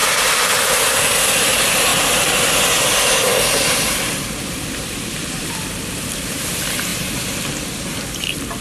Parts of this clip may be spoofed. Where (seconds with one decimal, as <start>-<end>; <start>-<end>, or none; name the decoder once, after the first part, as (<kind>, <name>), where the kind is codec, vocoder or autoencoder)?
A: 1.5-1.9 (vocoder, BigVGAN v2); 3.8-6.9; 8.1-8.6